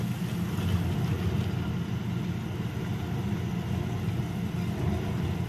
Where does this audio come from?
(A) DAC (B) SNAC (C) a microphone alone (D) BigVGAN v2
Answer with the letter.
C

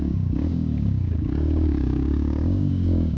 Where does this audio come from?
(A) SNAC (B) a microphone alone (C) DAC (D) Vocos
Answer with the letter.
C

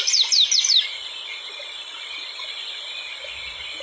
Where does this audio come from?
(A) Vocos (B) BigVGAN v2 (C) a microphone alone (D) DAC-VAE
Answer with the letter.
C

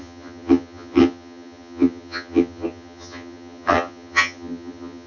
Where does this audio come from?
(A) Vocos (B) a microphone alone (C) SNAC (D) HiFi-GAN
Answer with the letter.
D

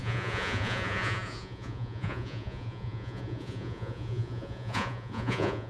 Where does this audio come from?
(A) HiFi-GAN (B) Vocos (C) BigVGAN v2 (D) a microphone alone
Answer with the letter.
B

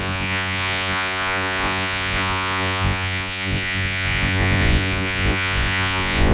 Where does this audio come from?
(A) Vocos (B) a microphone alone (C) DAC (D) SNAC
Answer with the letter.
A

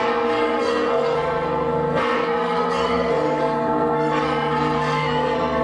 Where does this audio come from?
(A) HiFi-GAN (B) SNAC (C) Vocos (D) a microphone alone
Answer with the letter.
B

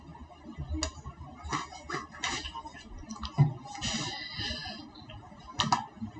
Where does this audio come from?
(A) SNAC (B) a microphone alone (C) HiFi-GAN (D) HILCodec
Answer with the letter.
B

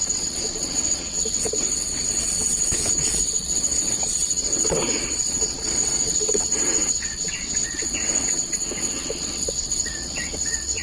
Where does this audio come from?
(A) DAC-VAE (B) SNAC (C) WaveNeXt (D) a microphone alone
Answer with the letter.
C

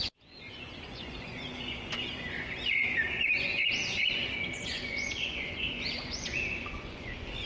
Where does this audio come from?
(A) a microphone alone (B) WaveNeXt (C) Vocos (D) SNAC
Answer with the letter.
C